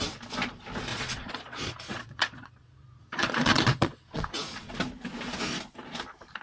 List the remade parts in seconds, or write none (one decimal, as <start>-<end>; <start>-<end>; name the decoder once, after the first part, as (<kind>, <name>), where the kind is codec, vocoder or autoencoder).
0.9-4.7 (vocoder, Vocos)